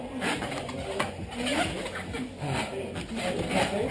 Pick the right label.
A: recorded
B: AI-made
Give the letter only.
A